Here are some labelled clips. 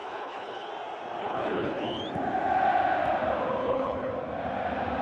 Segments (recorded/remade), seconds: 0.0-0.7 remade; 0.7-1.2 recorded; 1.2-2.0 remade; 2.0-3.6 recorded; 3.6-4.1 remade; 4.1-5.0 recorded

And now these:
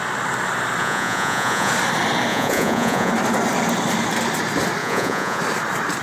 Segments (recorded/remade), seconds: 0.0-0.8 recorded; 0.8-1.7 remade; 1.7-2.3 recorded; 2.3-3.1 remade; 3.1-4.8 recorded; 4.8-5.4 remade; 5.4-6.0 recorded

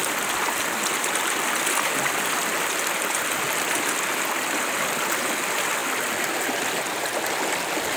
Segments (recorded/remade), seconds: 0.0-8.0 recorded

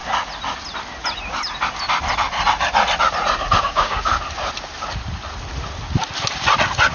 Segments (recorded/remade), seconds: 0.0-3.6 recorded; 3.6-4.1 remade; 4.1-6.9 recorded

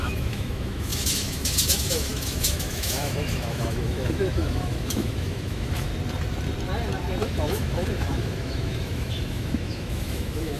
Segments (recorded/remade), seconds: 0.0-5.9 remade; 5.9-7.2 recorded; 7.2-10.6 remade

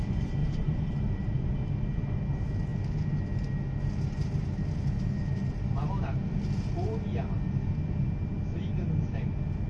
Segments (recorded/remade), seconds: 0.0-0.4 recorded; 0.4-1.5 remade; 1.5-9.7 recorded

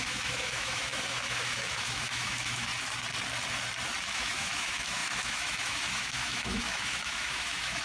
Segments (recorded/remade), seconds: 0.0-2.7 remade; 2.7-4.0 recorded; 4.0-7.8 remade